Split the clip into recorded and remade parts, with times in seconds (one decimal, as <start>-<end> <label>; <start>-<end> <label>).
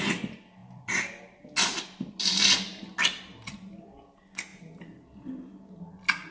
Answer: 0.0-6.3 recorded